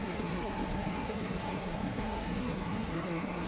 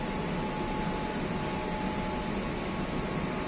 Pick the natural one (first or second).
second